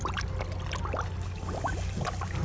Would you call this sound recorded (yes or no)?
yes